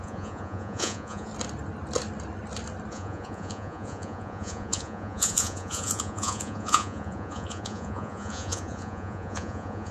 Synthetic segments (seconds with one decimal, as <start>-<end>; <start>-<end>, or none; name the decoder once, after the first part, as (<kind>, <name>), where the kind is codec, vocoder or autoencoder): 0.0-1.3 (vocoder, Vocos); 2.9-9.9